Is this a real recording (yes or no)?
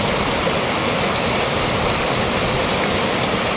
yes